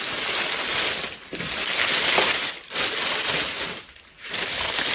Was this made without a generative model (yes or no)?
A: yes